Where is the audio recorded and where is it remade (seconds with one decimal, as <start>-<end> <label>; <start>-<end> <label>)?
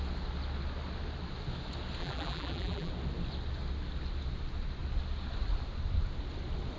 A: 0.0-2.0 recorded; 2.0-2.9 remade; 2.9-6.8 recorded